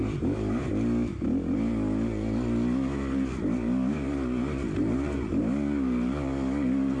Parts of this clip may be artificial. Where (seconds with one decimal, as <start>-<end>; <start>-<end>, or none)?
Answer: 0.0-0.7; 4.8-5.4